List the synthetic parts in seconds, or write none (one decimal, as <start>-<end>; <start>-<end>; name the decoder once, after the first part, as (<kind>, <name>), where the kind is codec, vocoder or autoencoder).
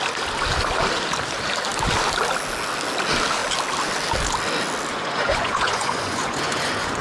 4.9-7.0 (vocoder, Vocos)